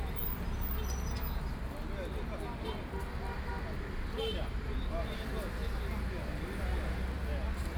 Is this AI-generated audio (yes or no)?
no